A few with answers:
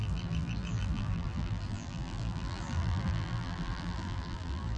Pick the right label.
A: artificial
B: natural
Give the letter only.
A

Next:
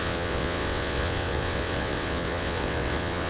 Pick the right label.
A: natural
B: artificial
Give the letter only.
B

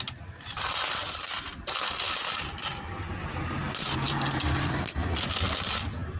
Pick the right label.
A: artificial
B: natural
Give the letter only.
B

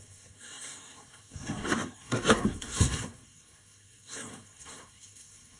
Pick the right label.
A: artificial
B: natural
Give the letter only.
A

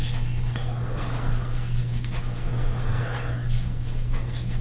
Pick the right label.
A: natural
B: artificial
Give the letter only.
B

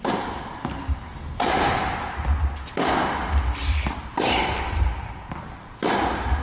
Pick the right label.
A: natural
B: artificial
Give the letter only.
A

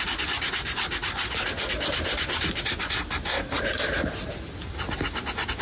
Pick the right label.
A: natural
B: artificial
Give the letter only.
A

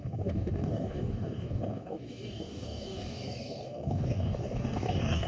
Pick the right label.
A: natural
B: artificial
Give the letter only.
B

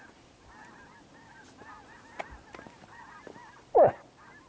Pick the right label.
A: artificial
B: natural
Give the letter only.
B